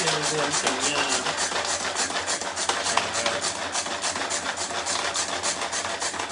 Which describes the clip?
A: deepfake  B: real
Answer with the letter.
B